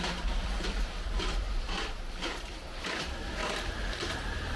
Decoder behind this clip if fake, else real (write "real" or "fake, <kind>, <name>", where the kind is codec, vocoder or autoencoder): fake, vocoder, BigVGAN v2